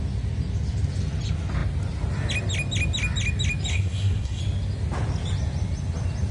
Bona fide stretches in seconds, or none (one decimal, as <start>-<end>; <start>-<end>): 0.0-3.7; 4.4-6.3